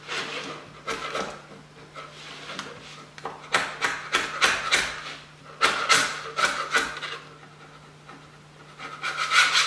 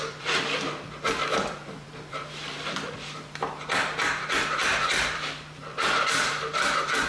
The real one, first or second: first